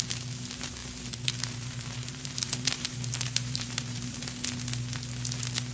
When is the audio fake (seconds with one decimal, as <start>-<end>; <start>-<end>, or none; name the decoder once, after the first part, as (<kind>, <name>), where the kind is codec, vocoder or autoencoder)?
0.8-4.2 (vocoder, BigVGAN v2)